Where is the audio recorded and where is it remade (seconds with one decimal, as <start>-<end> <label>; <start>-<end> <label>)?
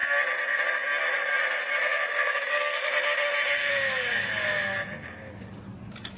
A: 0.0-1.9 recorded; 1.9-2.9 remade; 2.9-3.6 recorded; 3.6-5.3 remade; 5.3-6.2 recorded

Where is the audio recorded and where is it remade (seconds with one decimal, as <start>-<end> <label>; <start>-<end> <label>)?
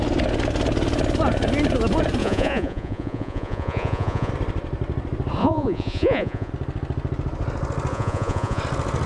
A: 0.0-2.2 recorded; 2.2-4.3 remade; 4.3-5.4 recorded; 5.4-6.5 remade; 6.5-7.9 recorded; 7.9-8.6 remade; 8.6-9.1 recorded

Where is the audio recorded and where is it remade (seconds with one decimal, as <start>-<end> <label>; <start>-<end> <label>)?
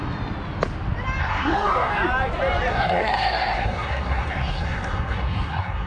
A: 0.0-1.2 recorded; 1.2-1.9 remade; 1.9-2.7 recorded; 2.7-5.9 remade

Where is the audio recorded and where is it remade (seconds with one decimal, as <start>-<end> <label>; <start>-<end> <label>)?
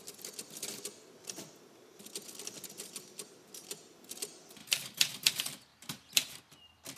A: 0.0-4.6 recorded; 4.6-5.3 remade; 5.3-5.7 recorded; 5.7-6.4 remade; 6.4-7.0 recorded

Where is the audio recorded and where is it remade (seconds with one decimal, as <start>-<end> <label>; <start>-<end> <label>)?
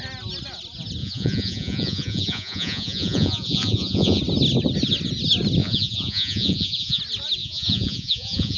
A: 0.0-1.0 recorded; 1.0-4.2 remade; 4.2-5.6 recorded; 5.6-7.0 remade; 7.0-7.4 recorded; 7.4-8.6 remade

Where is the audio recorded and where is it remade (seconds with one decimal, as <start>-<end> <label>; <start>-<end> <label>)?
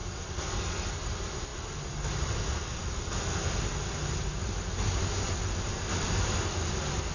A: 0.0-0.6 remade; 0.6-7.1 recorded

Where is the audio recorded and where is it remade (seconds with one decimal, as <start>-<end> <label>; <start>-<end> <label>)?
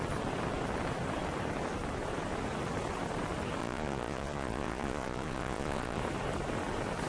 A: 0.0-3.6 recorded; 3.6-6.0 remade; 6.0-7.1 recorded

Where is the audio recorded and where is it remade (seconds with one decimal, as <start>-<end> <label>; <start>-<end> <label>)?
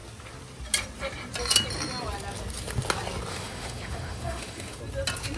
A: 0.0-3.3 recorded; 3.3-4.8 remade; 4.8-5.4 recorded